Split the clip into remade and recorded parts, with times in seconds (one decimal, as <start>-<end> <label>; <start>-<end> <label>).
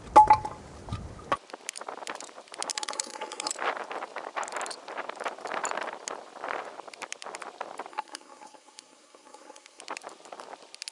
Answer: 0.0-2.7 recorded; 2.7-3.5 remade; 3.5-7.9 recorded; 7.9-9.8 remade; 9.8-10.9 recorded